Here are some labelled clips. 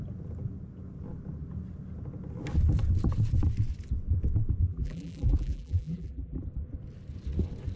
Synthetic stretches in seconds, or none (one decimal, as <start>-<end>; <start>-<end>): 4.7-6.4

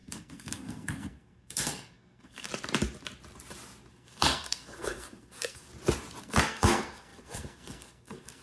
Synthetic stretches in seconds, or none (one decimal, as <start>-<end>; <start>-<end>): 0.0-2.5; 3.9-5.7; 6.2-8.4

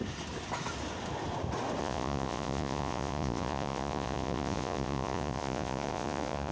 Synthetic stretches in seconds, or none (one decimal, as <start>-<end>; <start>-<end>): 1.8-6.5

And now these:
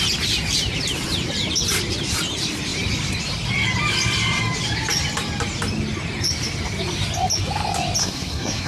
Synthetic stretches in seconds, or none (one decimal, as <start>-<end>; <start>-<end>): 8.0-8.7